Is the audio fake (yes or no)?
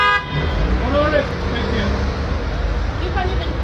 no